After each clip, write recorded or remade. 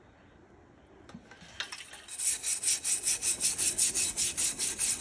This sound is recorded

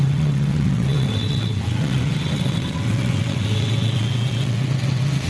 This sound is remade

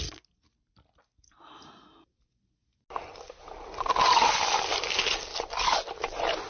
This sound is recorded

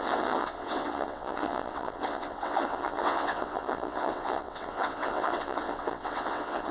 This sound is remade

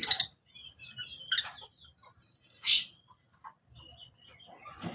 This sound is recorded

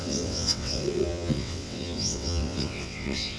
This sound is remade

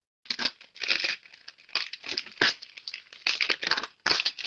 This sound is recorded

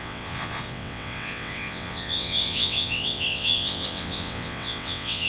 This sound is remade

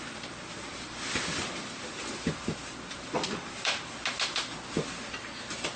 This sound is recorded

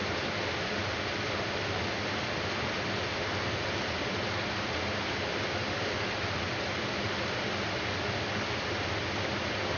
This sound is recorded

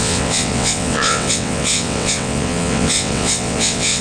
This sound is remade